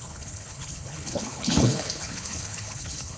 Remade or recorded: remade